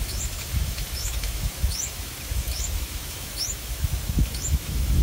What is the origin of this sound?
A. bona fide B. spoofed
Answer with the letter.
B